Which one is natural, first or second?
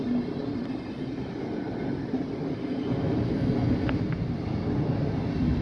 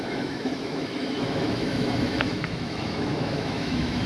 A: first